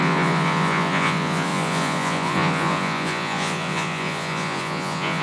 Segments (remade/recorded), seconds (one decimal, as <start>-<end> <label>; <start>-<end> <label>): 0.0-5.2 remade